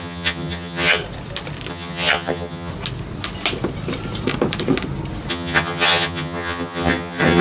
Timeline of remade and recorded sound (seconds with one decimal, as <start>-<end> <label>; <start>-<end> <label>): 0.0-1.0 remade; 1.0-1.7 recorded; 1.7-2.7 remade; 2.7-5.3 recorded; 5.3-7.4 remade